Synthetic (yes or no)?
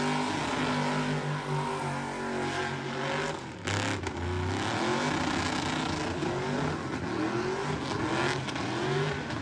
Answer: no